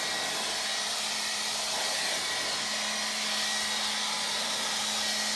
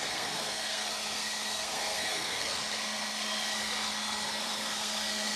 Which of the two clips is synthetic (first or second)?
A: second